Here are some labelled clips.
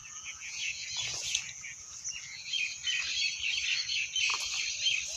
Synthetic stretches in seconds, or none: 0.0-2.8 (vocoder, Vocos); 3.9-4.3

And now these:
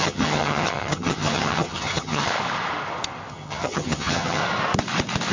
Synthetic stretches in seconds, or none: 0.0-2.3 (vocoder, HiFi-GAN); 3.3-4.4

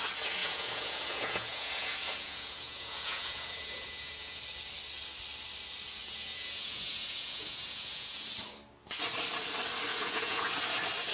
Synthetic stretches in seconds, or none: 0.4-4.4 (vocoder, Vocos); 6.0-8.3; 9.9-10.5

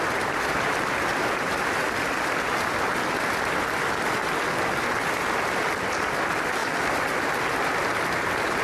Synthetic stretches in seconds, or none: none

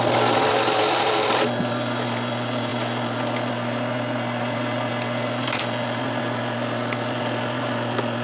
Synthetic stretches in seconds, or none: none